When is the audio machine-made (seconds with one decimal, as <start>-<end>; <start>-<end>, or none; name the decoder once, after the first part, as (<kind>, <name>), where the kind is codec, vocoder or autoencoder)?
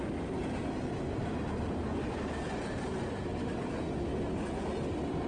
none